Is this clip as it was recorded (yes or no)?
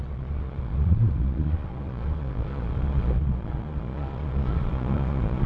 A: no